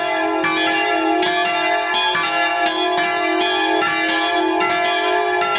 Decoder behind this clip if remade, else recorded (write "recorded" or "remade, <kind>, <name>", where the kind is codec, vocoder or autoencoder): recorded